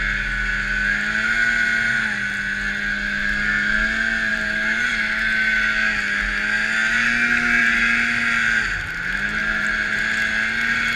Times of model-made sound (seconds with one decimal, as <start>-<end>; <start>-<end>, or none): 4.3-4.9; 9.4-10.0